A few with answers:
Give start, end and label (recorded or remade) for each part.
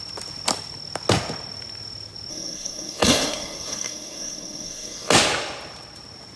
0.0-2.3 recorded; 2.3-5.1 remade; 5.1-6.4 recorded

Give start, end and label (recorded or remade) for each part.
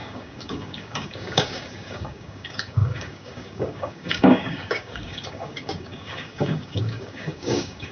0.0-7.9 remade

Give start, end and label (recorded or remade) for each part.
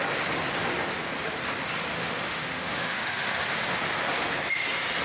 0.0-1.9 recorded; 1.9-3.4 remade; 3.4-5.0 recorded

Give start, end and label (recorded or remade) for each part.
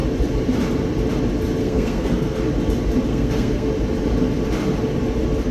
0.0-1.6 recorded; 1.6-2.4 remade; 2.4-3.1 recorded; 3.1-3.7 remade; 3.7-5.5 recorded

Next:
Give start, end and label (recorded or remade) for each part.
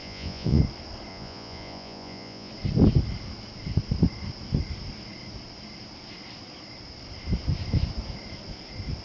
0.0-0.6 remade; 0.6-1.1 recorded; 1.1-2.5 remade; 2.5-9.0 recorded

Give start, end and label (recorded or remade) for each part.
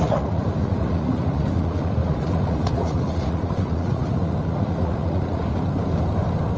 0.0-5.4 remade; 5.4-6.6 recorded